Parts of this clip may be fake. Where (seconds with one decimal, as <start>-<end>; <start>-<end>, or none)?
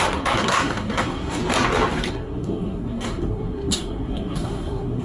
0.0-1.4; 2.1-5.0